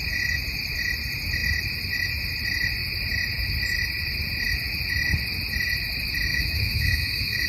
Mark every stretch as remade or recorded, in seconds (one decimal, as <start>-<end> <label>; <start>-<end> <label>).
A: 0.0-6.3 recorded; 6.3-7.5 remade